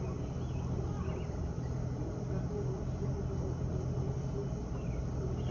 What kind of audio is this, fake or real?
real